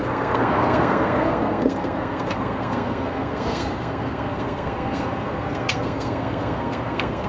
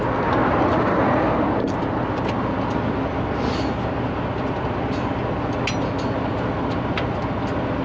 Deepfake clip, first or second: first